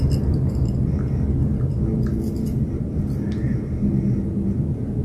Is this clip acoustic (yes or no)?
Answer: yes